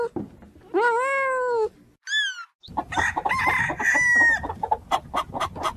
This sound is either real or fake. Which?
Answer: real